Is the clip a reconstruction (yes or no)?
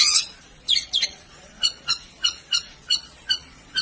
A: yes